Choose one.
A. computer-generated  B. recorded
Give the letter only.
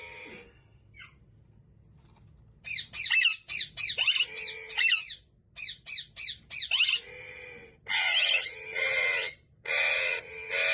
B